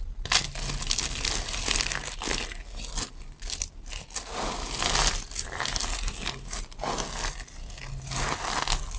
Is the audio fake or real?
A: real